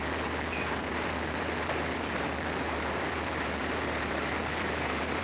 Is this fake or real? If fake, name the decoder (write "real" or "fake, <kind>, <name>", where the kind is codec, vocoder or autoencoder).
fake, vocoder, BigVGAN v2